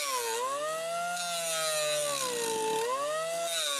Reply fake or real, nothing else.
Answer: real